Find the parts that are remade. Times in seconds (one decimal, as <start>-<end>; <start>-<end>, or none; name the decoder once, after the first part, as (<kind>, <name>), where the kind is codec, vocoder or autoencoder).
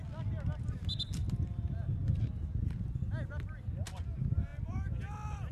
none